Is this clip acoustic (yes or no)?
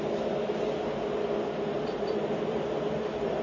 yes